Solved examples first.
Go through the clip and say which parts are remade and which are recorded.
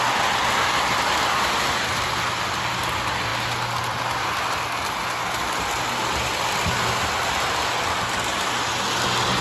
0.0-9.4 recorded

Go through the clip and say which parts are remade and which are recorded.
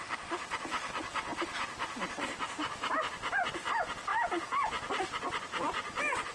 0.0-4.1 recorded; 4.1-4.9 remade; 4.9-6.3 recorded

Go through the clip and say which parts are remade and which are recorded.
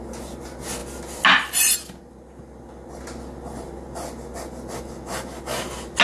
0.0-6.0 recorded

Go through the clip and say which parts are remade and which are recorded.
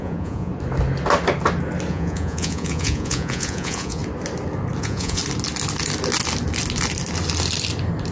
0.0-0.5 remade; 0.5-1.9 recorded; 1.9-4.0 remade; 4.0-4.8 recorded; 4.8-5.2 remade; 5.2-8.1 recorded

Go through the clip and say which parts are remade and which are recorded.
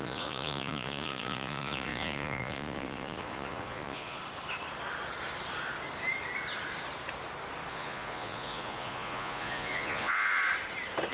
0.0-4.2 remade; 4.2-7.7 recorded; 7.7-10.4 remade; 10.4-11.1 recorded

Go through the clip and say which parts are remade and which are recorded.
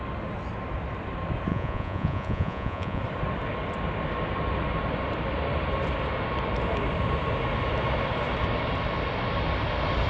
0.0-1.5 recorded; 1.5-3.0 remade; 3.0-10.1 recorded